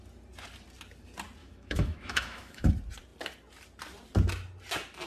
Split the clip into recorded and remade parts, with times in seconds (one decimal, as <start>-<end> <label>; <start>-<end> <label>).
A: 0.0-1.4 recorded; 1.4-2.7 remade; 2.7-5.1 recorded